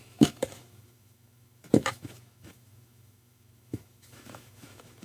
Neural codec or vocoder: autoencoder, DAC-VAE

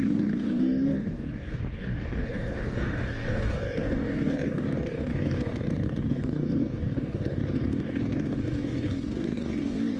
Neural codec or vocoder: codec, DAC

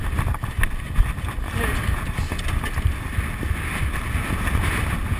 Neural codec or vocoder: none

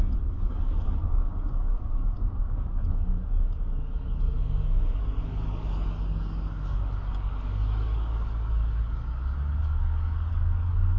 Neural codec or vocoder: codec, DAC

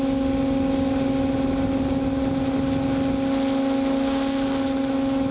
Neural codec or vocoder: none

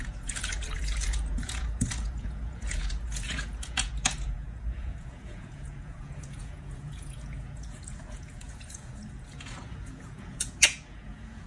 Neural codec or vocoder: vocoder, Vocos